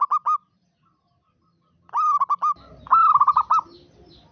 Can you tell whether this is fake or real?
real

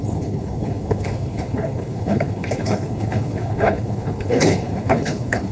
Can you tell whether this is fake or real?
fake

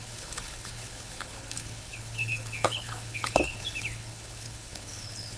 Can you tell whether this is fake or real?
fake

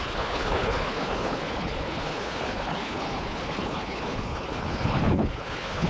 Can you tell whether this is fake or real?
fake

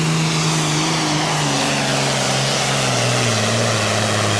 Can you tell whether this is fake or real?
real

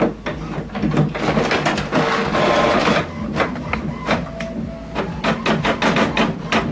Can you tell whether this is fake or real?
real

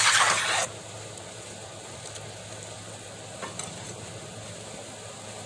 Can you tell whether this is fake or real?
real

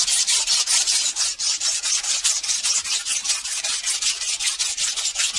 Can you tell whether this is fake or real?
real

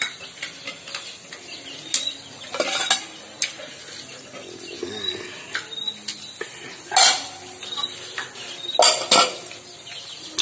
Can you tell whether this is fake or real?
real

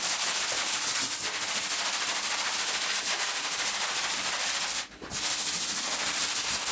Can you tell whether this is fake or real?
real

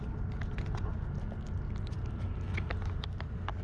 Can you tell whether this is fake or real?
real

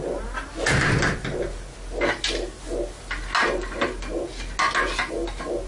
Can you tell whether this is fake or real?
real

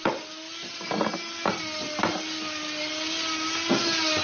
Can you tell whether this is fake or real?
real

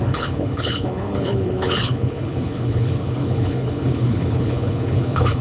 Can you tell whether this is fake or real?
fake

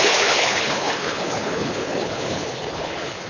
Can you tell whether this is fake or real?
fake